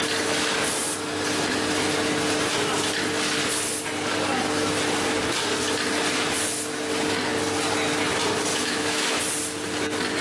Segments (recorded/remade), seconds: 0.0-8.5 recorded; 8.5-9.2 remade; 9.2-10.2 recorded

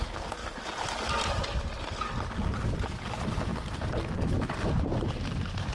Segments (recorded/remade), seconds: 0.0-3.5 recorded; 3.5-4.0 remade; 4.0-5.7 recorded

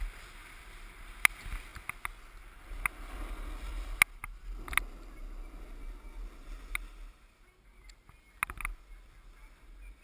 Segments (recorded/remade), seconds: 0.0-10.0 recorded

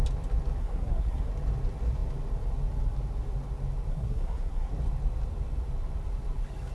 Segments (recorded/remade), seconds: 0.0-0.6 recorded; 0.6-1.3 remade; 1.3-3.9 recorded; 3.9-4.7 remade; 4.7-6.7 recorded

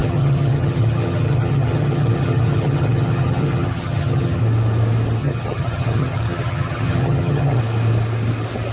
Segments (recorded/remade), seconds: 0.0-4.4 remade; 4.4-5.2 recorded; 5.2-7.6 remade; 7.6-8.7 recorded

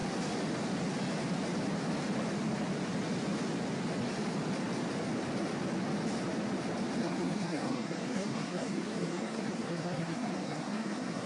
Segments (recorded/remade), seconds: 0.0-7.0 recorded; 7.0-11.3 remade